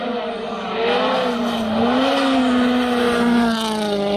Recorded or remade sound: recorded